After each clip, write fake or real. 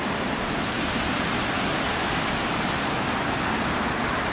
real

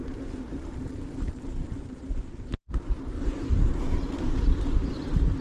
fake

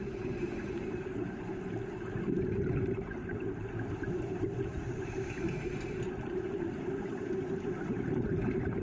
fake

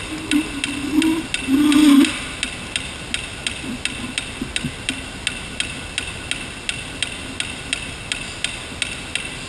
real